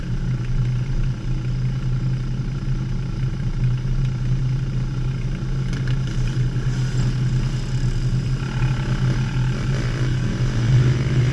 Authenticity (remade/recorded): recorded